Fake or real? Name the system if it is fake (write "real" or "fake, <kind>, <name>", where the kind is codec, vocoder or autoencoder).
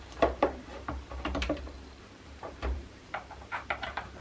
fake, vocoder, BigVGAN v2